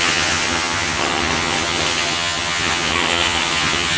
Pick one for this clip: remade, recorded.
remade